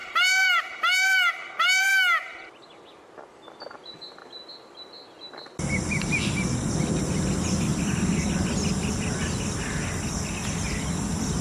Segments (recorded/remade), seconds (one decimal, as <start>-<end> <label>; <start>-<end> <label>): 0.0-1.9 remade; 1.9-3.3 recorded; 3.3-4.2 remade; 4.2-7.0 recorded; 7.0-7.7 remade; 7.7-8.2 recorded; 8.2-11.4 remade